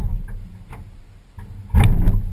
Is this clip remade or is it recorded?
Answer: recorded